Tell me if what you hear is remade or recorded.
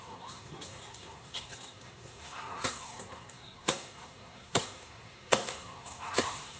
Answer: remade